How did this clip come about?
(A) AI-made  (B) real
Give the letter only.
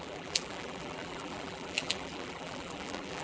A